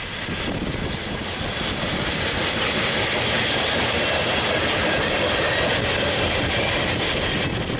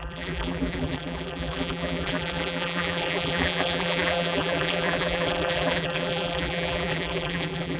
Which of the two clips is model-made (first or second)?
second